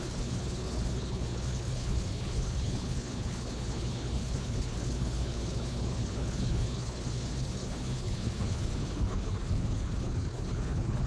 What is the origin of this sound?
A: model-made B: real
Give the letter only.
A